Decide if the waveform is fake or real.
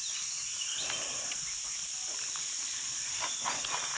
real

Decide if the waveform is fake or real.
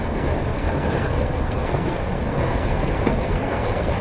fake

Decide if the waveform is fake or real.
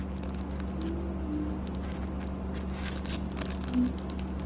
real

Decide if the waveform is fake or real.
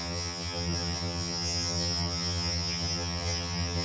fake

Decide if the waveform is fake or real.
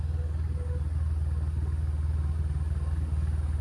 real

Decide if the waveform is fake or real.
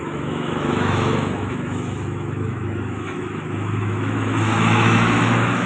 fake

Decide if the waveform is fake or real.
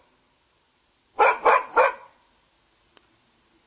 real